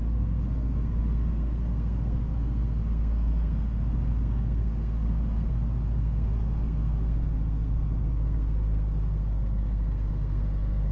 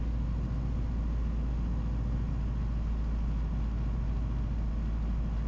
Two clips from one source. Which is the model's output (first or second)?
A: first